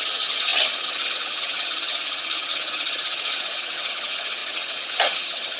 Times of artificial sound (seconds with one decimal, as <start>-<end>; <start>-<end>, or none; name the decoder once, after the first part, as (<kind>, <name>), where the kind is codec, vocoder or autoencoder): 0.0-5.6 (vocoder, HiFi-GAN)